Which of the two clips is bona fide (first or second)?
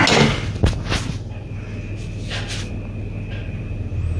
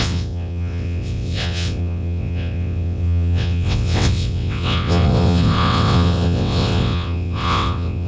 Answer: first